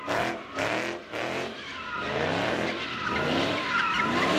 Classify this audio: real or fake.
fake